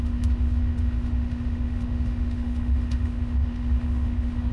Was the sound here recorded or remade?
remade